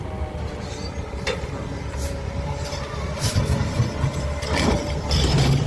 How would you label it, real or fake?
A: real